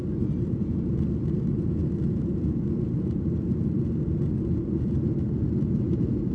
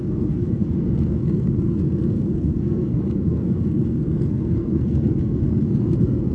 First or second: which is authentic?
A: first